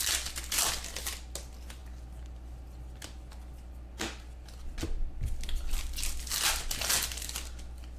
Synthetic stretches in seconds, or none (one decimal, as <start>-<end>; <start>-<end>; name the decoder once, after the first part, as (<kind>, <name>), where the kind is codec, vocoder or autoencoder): none